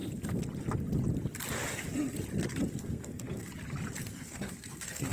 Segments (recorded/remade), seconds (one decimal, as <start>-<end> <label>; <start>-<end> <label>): 0.0-2.8 recorded; 2.8-3.5 remade; 3.5-4.0 recorded; 4.0-5.1 remade